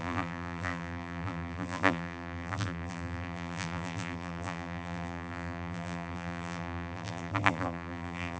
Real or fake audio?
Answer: fake